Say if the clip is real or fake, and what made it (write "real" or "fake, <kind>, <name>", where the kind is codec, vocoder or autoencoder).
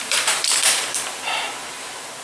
fake, vocoder, BigVGAN v2